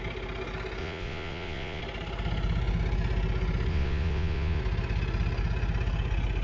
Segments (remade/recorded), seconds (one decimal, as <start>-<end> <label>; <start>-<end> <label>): 0.0-0.8 recorded; 0.8-1.8 remade; 1.8-3.7 recorded; 3.7-4.6 remade; 4.6-6.4 recorded